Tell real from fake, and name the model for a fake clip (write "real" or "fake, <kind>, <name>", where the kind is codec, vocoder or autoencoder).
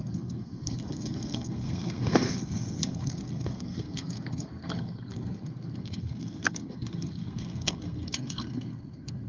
fake, codec, SNAC